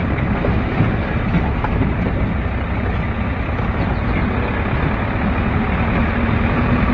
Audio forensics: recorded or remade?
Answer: recorded